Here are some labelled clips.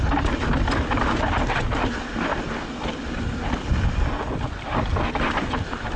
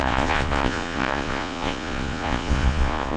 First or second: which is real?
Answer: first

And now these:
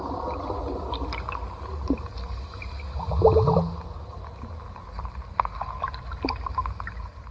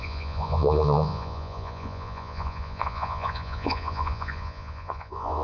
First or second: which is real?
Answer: first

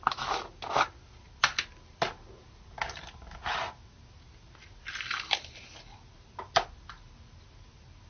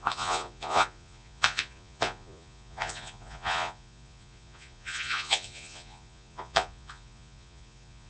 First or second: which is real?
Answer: first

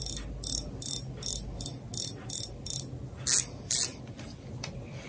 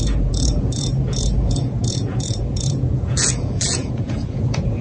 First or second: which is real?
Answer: first